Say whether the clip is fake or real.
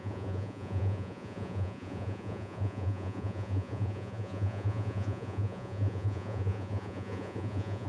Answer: fake